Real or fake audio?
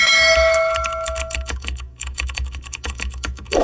fake